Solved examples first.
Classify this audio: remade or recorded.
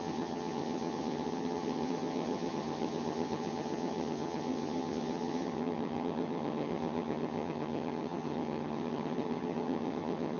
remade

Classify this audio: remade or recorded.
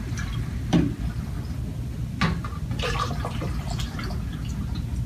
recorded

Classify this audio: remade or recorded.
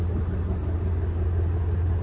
recorded